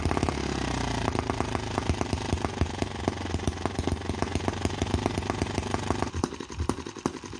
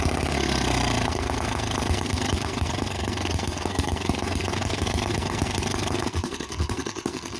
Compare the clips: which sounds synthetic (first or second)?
second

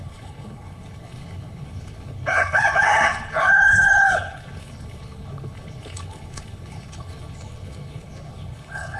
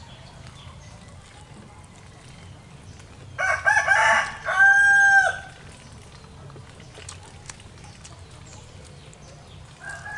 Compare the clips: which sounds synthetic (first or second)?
first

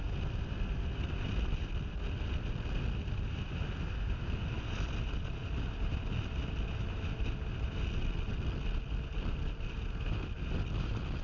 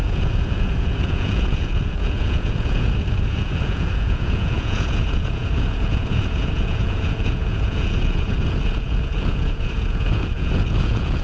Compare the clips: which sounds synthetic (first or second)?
second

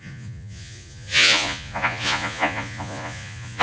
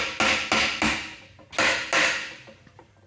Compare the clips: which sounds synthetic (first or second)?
first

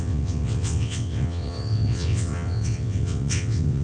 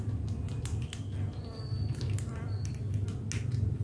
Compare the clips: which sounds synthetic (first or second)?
first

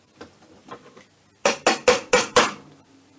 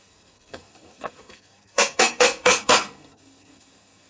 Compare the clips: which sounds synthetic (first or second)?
second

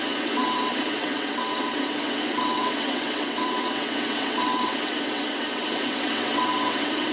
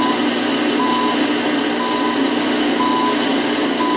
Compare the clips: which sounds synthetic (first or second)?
first